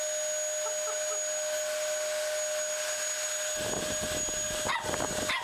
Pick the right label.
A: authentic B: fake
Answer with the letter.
A